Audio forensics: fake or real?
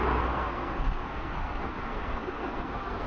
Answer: fake